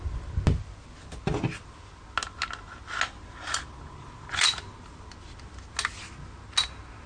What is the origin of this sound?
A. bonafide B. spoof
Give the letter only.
A